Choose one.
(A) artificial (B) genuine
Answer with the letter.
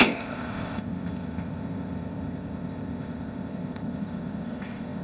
A